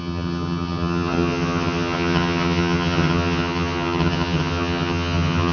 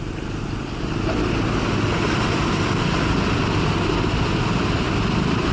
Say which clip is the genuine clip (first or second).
second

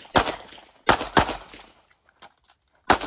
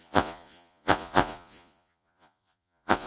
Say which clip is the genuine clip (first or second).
first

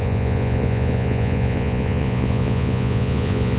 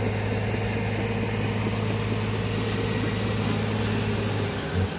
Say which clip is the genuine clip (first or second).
second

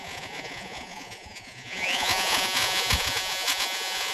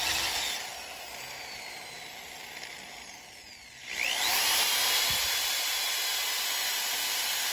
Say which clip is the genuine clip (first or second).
second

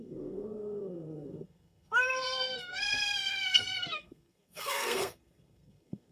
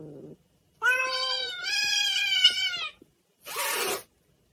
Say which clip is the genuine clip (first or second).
second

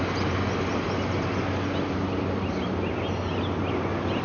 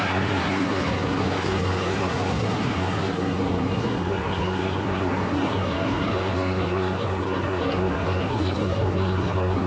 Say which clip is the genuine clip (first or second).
first